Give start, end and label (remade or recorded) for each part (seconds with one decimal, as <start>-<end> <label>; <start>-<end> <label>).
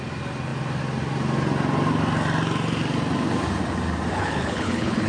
0.0-4.1 recorded; 4.1-5.1 remade